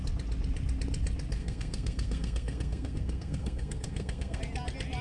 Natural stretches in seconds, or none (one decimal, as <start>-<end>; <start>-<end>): 0.0-1.4; 4.4-5.0